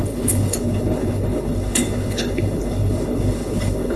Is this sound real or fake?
fake